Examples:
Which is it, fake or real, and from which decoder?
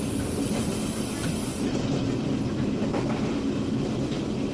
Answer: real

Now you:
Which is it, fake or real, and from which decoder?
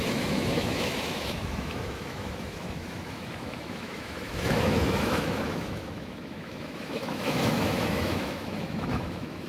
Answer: fake, autoencoder, DAC-VAE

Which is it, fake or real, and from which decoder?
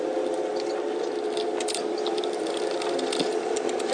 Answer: real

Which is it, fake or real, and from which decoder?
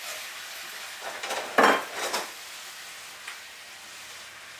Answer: real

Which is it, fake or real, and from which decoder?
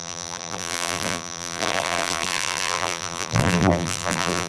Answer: fake, vocoder, BigVGAN v2